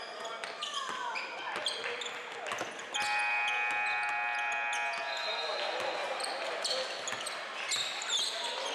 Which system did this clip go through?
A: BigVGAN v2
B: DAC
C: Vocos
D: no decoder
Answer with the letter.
D